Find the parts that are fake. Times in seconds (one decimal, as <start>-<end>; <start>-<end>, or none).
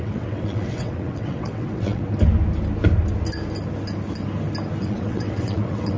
0.0-2.0; 4.8-6.0